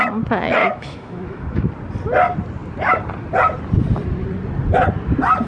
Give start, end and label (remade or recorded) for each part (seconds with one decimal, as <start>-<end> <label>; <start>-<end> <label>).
0.0-0.6 recorded; 0.6-1.7 remade; 1.7-5.5 recorded